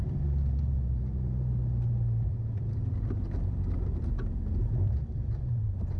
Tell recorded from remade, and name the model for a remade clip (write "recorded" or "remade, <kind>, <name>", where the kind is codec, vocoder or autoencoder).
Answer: remade, vocoder, BigVGAN v2